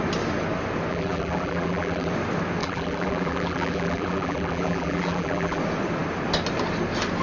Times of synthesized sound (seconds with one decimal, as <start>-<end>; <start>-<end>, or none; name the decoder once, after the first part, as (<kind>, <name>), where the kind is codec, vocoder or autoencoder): 0.9-2.1 (vocoder, BigVGAN v2); 2.6-5.6